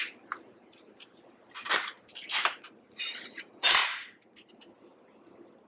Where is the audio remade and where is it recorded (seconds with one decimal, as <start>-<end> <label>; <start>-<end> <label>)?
0.0-3.4 remade; 3.4-3.8 recorded; 3.8-4.5 remade; 4.5-5.7 recorded